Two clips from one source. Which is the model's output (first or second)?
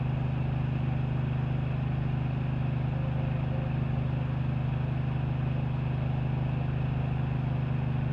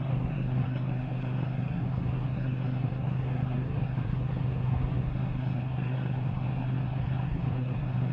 second